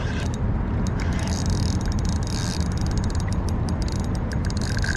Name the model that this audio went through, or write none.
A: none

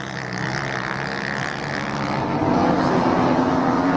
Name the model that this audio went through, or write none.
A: none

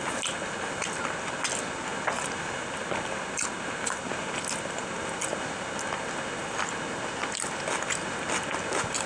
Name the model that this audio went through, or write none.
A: none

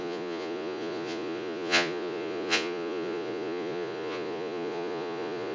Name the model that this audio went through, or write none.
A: vocoder, Vocos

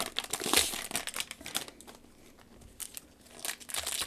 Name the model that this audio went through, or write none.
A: none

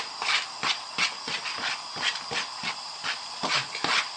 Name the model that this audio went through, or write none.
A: none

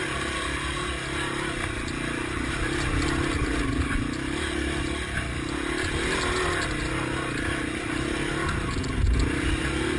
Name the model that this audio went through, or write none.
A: none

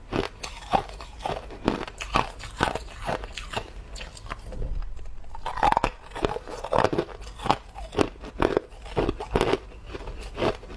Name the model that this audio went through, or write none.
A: none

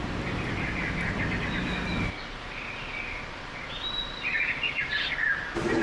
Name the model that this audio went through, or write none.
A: none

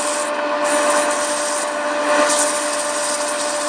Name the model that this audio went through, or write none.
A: none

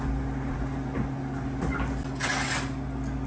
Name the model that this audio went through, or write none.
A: none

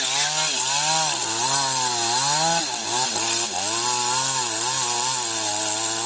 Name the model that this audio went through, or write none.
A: none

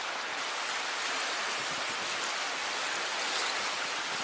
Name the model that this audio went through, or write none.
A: none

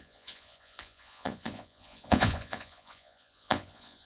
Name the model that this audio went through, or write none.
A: vocoder, Vocos